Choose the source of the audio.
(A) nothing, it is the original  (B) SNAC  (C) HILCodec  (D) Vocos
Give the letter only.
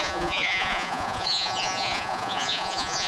D